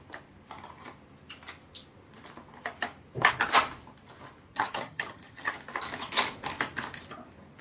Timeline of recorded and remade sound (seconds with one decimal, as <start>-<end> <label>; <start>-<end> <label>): 0.0-4.5 recorded; 4.5-5.5 remade; 5.5-7.6 recorded